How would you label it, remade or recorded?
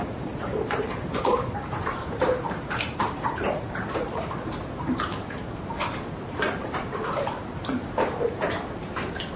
remade